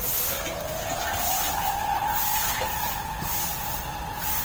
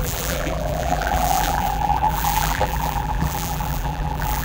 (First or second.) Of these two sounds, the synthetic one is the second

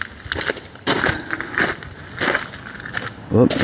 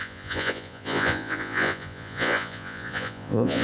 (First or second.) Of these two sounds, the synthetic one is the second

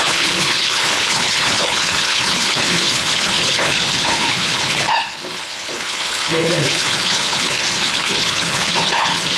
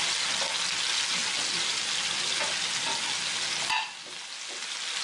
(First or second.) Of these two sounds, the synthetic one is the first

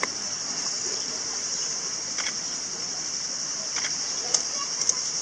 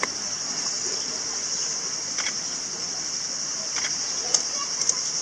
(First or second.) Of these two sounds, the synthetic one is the first